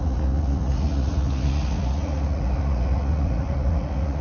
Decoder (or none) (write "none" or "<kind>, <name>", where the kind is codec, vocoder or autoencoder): vocoder, Vocos